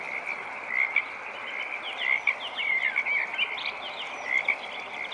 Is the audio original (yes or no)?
yes